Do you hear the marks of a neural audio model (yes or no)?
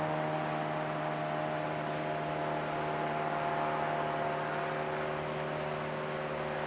no